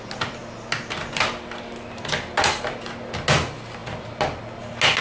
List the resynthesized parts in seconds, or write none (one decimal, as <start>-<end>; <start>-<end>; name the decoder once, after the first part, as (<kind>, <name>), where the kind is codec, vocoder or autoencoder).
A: none